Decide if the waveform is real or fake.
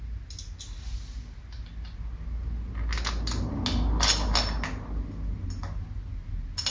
real